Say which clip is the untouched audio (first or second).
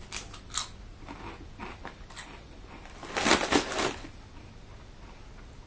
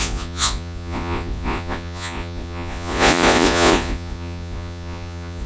first